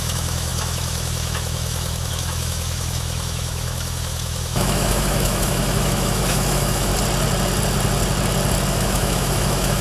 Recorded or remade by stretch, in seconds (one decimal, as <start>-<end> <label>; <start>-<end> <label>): 0.0-6.9 remade; 6.9-8.7 recorded; 8.7-9.8 remade